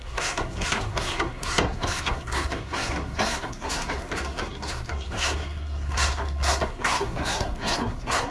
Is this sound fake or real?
fake